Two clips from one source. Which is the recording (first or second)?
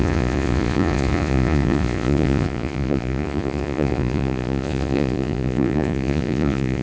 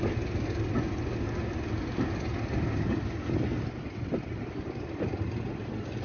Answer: second